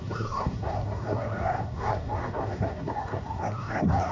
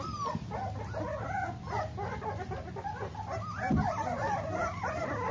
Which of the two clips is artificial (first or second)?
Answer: first